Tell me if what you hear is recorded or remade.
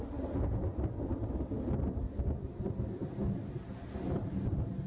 recorded